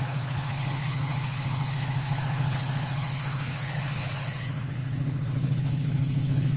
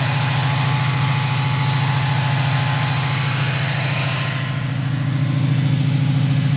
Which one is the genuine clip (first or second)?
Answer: second